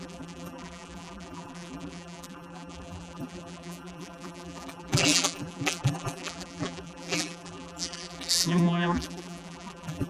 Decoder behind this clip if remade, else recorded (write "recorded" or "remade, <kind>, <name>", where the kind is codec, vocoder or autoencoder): remade, vocoder, BigVGAN v2